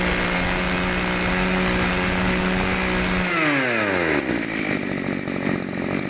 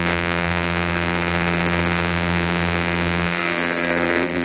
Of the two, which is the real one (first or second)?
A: first